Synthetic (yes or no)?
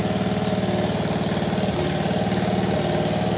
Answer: no